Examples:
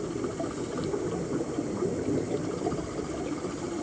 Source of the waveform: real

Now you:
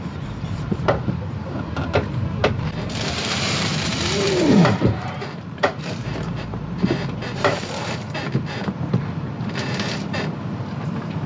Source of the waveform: fake